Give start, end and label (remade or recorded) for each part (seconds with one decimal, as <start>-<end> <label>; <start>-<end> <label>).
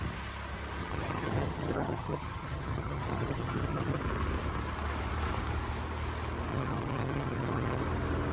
0.0-0.8 recorded; 0.8-4.0 remade; 4.0-6.5 recorded; 6.5-7.8 remade; 7.8-8.3 recorded